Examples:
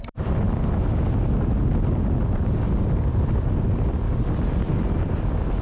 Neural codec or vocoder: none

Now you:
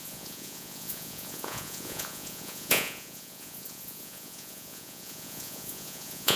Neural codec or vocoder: vocoder, Vocos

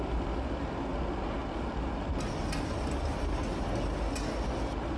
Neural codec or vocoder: none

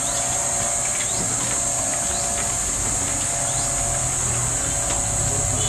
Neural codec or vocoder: none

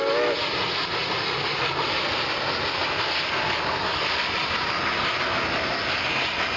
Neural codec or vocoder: none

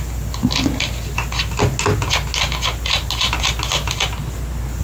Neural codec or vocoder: none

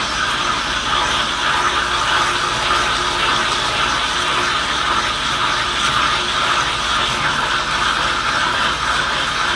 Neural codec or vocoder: none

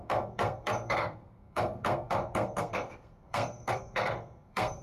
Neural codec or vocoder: codec, SNAC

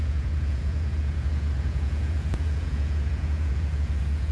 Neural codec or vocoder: vocoder, Vocos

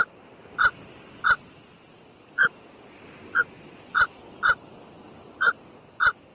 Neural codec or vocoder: none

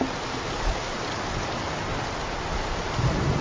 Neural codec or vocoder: none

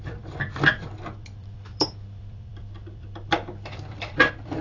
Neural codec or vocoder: vocoder, BigVGAN v2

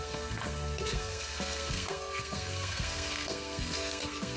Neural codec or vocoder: codec, SNAC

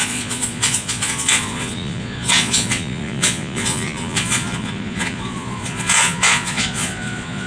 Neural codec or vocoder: vocoder, Vocos